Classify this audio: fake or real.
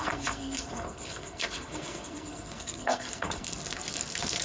fake